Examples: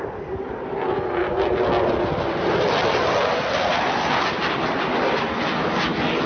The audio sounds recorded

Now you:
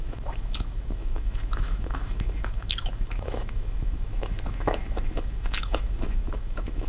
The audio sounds remade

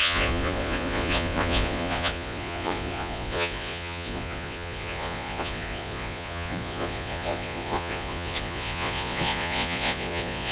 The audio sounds remade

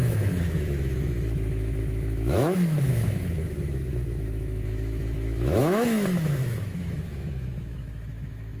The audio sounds remade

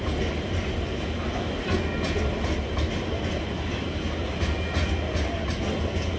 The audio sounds recorded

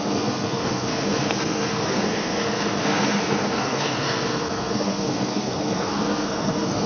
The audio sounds remade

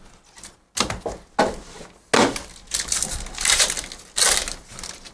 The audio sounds recorded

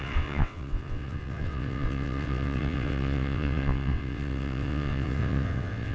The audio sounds remade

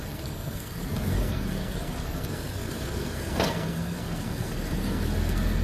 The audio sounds remade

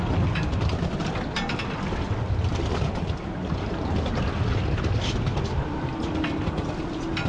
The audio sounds recorded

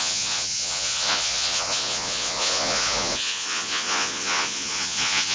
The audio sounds remade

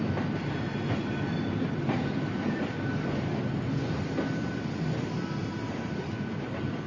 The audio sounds recorded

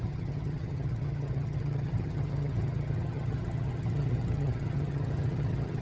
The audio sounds remade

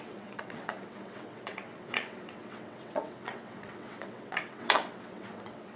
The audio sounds remade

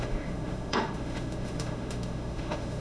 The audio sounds remade